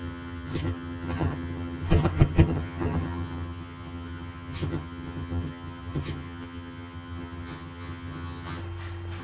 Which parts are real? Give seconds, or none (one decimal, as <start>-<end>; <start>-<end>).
8.6-9.2